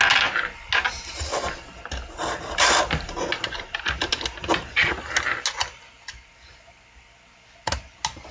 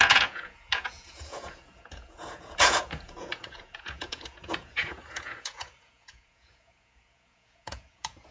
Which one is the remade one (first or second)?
second